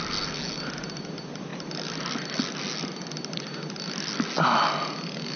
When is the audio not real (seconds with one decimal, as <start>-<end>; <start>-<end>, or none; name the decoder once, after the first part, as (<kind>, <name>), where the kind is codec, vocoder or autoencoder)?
none